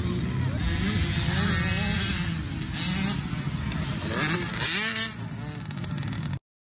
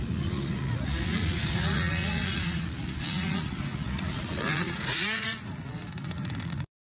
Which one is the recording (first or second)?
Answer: first